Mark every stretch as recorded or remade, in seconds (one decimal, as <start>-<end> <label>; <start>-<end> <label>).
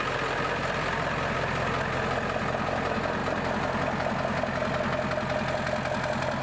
0.0-6.4 recorded